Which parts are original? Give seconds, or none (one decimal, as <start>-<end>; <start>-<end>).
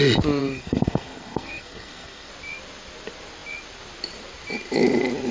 0.0-0.4; 2.3-5.3